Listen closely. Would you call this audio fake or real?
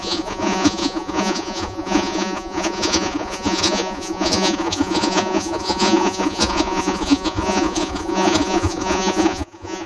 fake